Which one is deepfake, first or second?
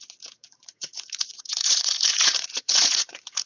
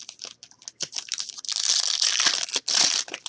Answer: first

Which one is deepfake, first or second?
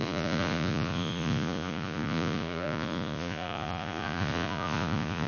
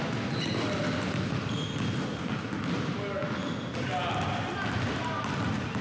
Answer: first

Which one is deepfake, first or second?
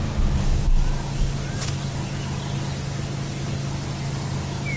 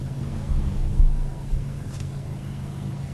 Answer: second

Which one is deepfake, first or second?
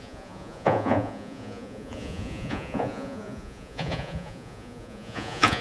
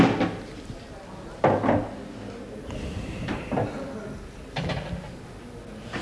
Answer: first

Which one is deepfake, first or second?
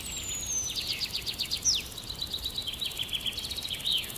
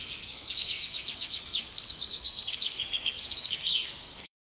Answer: second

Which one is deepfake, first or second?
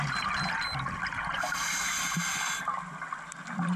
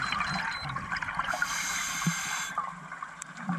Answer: second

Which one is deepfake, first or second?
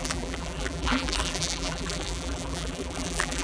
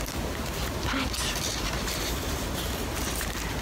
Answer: first